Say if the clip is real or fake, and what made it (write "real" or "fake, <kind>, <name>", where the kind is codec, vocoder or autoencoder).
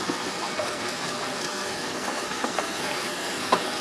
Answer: fake, codec, SNAC